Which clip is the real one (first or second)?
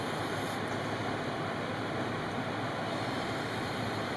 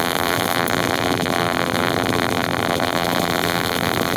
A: first